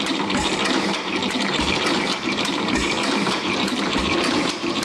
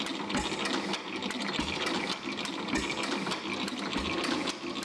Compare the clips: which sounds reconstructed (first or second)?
first